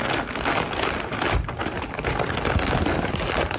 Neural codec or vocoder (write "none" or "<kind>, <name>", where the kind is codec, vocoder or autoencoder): none